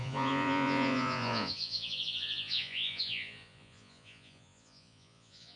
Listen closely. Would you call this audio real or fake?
fake